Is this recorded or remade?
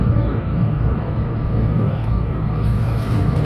remade